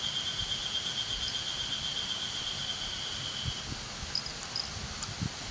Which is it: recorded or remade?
recorded